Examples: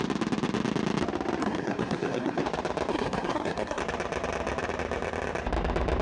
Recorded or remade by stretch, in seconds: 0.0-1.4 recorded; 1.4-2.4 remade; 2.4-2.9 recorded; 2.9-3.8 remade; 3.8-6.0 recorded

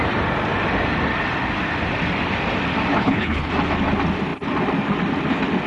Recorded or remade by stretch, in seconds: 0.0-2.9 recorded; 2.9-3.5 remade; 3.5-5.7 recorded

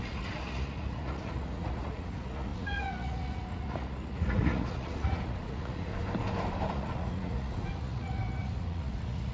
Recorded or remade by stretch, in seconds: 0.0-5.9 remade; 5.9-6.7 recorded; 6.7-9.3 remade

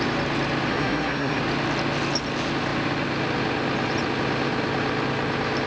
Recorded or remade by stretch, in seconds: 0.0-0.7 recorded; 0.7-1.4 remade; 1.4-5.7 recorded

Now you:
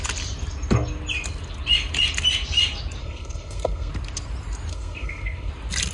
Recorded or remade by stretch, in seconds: 0.0-3.0 recorded; 3.0-3.9 remade; 3.9-4.7 recorded; 4.7-5.5 remade; 5.5-5.9 recorded

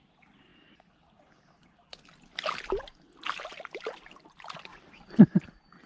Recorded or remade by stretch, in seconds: 0.0-5.9 recorded